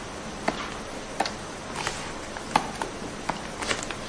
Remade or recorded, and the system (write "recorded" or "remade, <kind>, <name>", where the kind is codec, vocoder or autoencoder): recorded